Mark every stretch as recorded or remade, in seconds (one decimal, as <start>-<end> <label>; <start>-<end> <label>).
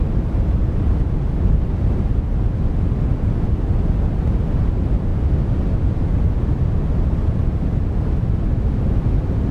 0.0-9.5 recorded